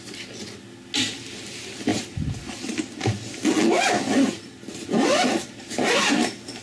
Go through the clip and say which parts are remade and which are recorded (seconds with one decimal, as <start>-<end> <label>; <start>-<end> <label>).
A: 0.0-6.6 recorded